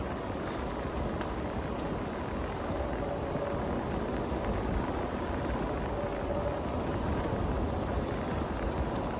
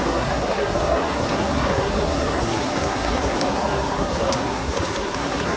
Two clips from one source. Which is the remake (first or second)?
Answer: second